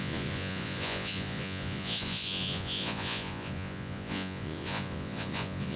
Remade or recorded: remade